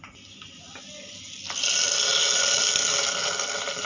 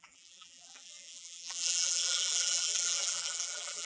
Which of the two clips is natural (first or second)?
first